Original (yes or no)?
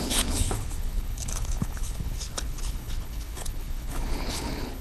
no